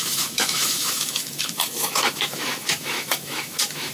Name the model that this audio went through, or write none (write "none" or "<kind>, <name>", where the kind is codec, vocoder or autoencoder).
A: autoencoder, DAC-VAE